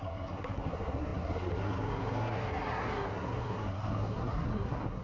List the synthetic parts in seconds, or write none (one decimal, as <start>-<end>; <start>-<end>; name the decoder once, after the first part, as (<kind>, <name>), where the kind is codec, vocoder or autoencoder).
0.0-5.0 (codec, SNAC)